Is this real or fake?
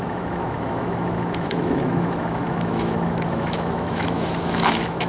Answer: fake